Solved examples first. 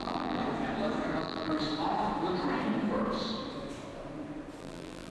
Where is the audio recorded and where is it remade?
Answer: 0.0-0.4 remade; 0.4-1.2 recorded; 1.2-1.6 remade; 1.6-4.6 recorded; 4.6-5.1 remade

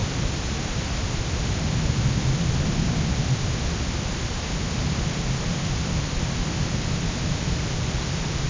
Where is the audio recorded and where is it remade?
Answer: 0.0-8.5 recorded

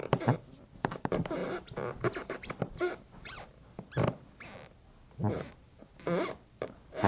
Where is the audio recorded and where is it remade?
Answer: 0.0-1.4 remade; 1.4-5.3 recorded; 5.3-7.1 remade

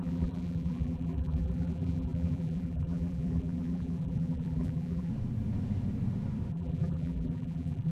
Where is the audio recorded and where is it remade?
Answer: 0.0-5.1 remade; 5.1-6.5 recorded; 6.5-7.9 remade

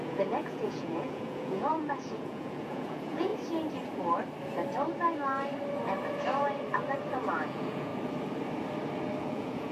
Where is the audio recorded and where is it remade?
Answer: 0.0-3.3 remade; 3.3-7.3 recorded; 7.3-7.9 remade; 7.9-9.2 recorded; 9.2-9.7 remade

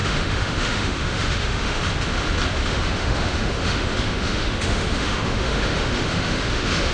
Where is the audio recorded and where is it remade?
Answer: 0.0-1.8 remade; 1.8-2.6 recorded; 2.6-6.9 remade

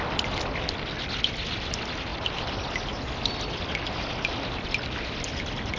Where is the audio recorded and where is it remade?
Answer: 0.0-5.8 recorded

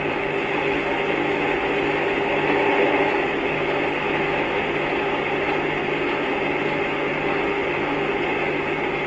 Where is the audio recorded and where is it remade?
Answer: 0.0-9.1 recorded